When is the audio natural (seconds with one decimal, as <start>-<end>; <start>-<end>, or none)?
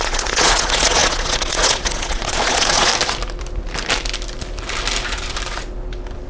2.9-6.3